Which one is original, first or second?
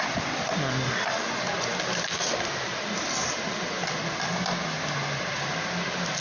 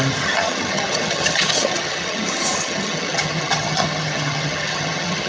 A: first